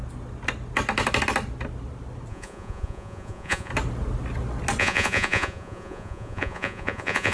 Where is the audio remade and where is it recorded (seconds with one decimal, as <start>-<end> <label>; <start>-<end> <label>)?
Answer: 0.0-2.3 recorded; 2.3-3.7 remade; 3.7-4.8 recorded; 4.8-7.3 remade